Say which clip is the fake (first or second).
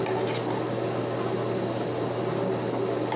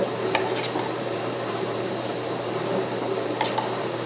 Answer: second